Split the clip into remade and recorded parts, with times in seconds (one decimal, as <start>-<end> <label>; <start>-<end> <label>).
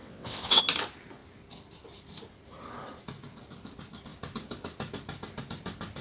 0.0-0.6 remade; 0.6-6.0 recorded